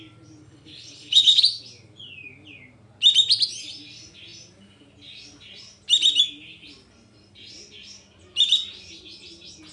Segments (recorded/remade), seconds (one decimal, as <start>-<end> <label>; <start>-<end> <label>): 0.0-0.4 recorded; 0.4-1.4 remade; 1.4-9.7 recorded